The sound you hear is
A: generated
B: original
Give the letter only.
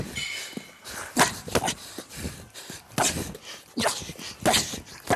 B